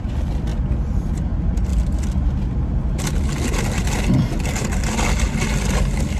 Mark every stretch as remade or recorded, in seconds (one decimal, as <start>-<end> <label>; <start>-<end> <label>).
0.0-6.2 recorded

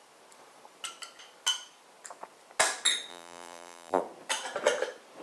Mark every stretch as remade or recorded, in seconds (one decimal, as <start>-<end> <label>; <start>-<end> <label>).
0.0-3.1 recorded; 3.1-4.0 remade; 4.0-5.2 recorded

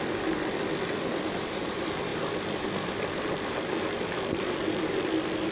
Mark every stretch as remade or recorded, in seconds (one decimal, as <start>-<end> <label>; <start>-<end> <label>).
0.0-5.5 recorded